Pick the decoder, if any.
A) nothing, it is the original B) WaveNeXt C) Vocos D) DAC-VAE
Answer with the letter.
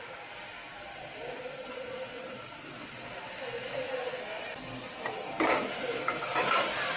A